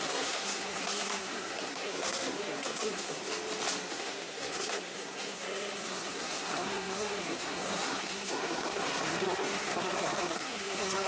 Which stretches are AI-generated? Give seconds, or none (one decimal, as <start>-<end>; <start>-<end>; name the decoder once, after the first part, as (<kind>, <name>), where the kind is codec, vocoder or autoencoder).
0.0-3.2 (codec, SNAC); 3.9-11.1